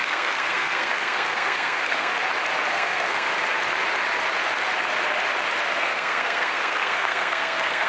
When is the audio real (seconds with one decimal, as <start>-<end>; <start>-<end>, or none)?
2.1-2.7; 3.3-5.8